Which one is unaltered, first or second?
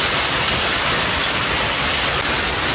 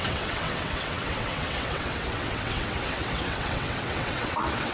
first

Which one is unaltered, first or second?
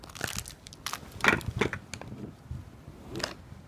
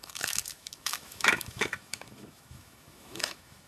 first